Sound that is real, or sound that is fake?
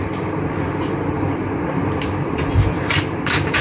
real